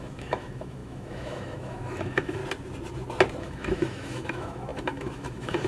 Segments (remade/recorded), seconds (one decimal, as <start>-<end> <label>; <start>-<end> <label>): 0.0-2.4 remade; 2.4-3.4 recorded; 3.4-5.7 remade